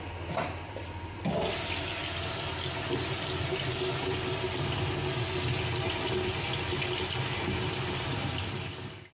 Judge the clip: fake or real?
real